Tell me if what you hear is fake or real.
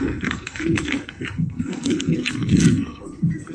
fake